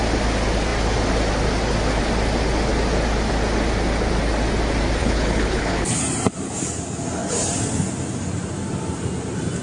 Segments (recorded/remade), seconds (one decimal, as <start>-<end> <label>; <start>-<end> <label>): 0.0-5.0 recorded; 5.0-6.0 remade; 6.0-9.6 recorded